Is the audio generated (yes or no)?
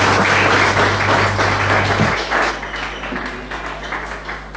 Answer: no